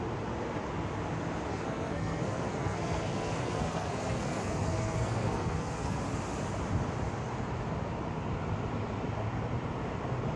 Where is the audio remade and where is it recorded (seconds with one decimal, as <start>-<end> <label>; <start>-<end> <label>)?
0.0-1.5 recorded; 1.5-6.0 remade; 6.0-10.4 recorded